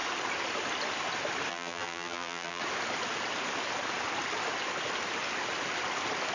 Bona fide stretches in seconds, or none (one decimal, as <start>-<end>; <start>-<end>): 0.0-1.5; 2.6-6.3